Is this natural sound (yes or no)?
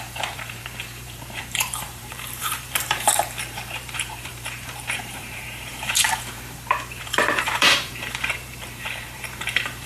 no